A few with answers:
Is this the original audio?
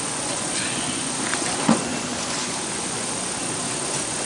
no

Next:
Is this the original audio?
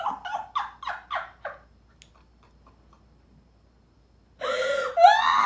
yes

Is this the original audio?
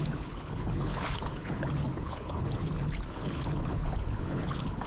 no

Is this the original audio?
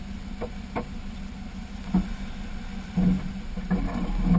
yes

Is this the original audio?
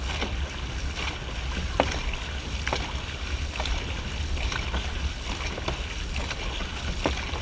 yes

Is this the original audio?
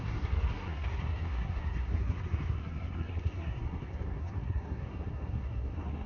no